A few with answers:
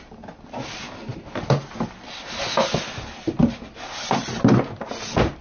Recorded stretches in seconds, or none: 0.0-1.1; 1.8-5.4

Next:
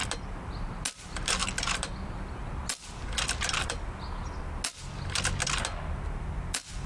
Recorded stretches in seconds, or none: 0.0-6.9